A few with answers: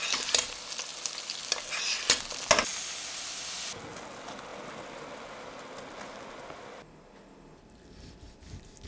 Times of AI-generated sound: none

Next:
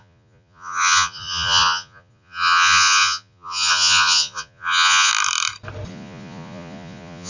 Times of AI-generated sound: 0.0-5.1 (vocoder, Vocos); 5.9-7.3

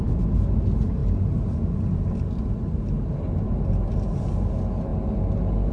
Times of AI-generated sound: none

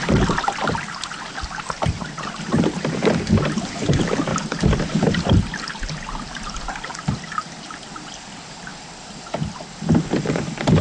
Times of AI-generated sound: none

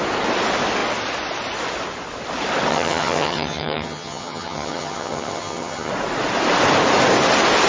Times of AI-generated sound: 2.7-5.9 (vocoder, HiFi-GAN)